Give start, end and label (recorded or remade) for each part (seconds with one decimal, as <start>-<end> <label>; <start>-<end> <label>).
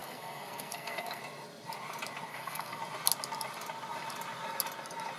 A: 0.0-1.2 remade; 1.2-2.3 recorded; 2.3-2.8 remade; 2.8-5.2 recorded